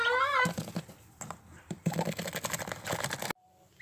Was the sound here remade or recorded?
recorded